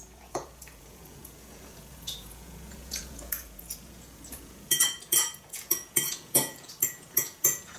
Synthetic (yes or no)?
yes